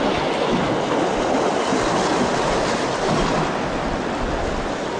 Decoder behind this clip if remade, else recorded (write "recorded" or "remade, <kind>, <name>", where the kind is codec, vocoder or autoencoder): recorded